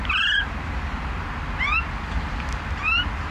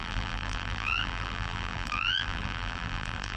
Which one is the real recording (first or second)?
first